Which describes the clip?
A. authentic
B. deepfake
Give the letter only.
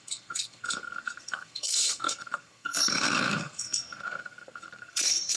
B